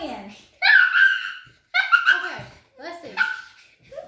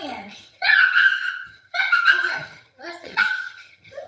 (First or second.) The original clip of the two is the first